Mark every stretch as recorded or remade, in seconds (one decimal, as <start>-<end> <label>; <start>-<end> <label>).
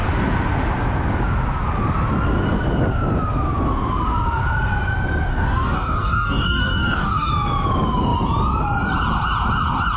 0.0-5.3 recorded; 5.3-7.3 remade; 7.3-10.0 recorded